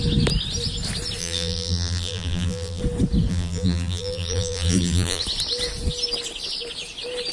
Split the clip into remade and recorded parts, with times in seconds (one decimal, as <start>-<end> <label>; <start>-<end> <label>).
0.0-1.2 recorded; 1.2-2.8 remade; 2.8-3.3 recorded; 3.3-5.2 remade; 5.2-7.3 recorded